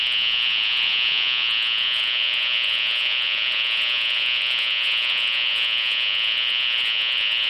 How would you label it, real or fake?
fake